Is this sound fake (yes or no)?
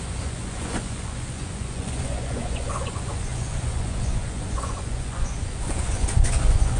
yes